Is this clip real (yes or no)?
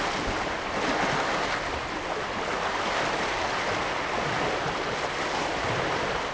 yes